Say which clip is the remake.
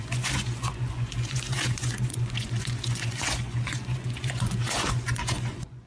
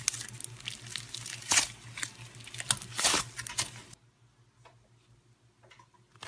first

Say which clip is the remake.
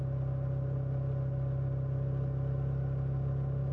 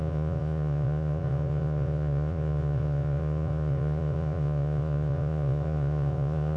second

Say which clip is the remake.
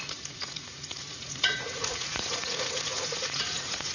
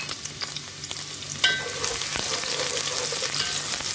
first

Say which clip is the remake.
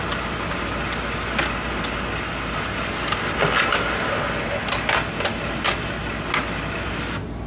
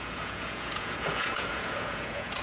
second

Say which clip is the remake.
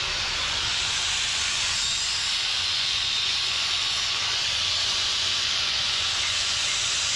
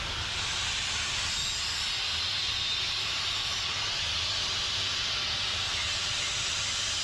first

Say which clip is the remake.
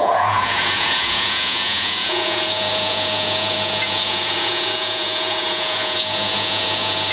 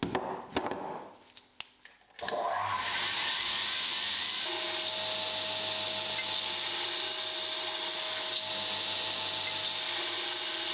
first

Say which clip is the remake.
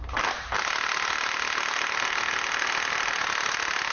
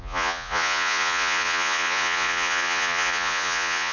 second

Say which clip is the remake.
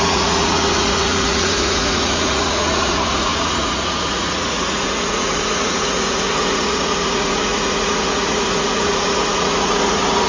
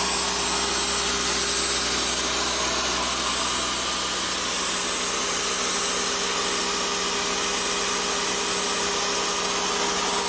first